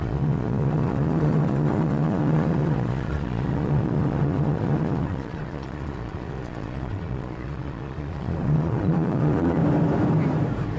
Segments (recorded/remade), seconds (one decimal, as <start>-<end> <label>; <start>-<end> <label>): 0.0-9.6 remade; 9.6-10.8 recorded